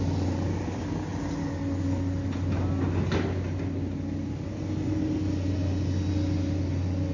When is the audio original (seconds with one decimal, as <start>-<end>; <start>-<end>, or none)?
0.0-7.1